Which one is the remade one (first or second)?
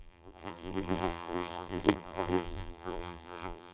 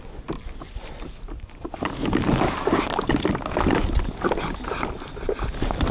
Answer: first